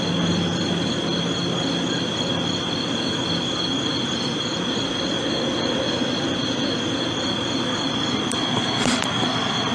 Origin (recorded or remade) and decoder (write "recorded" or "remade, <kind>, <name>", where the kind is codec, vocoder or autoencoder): recorded